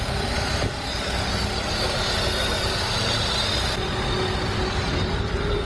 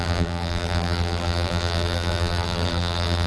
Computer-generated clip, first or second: second